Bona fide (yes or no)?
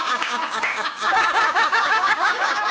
no